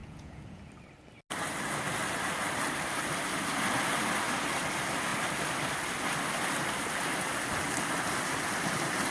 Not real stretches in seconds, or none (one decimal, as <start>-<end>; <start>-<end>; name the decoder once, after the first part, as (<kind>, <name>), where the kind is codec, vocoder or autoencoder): 0.0-0.6 (vocoder, Vocos)